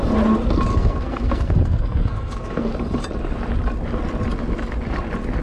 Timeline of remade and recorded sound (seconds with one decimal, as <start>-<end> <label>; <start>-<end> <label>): 0.0-0.7 recorded; 0.7-2.7 remade; 2.7-5.4 recorded